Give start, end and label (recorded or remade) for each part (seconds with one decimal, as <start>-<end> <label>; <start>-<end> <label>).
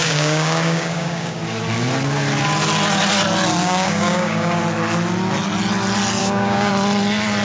0.0-1.4 remade; 1.4-3.6 recorded; 3.6-4.6 remade; 4.6-6.2 recorded; 6.2-6.7 remade; 6.7-7.4 recorded